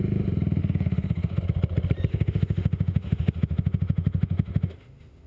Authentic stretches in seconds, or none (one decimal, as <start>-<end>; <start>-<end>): 0.0-0.6; 1.4-2.1

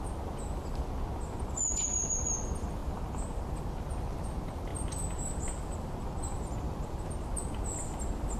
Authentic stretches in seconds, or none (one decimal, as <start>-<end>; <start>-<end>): 0.0-2.8; 3.6-4.7

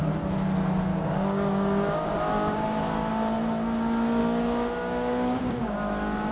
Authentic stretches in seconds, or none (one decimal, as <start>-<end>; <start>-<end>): 0.0-0.9; 3.1-4.2

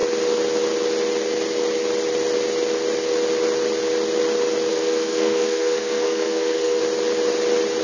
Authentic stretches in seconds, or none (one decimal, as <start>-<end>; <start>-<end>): 0.0-4.7; 6.8-7.8

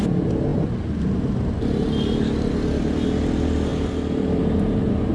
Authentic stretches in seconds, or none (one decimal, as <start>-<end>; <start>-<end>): 0.0-5.1

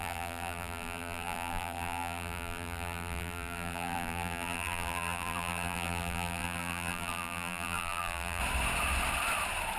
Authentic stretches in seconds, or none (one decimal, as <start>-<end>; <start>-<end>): 8.4-9.8